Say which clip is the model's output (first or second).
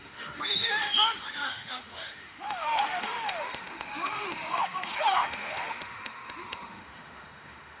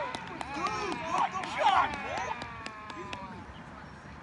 first